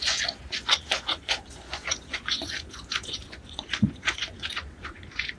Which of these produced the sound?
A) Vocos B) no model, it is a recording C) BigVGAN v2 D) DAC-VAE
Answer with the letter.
A